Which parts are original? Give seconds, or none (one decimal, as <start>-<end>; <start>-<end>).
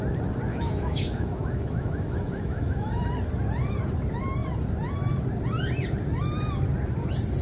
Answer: 0.0-0.5; 3.0-7.4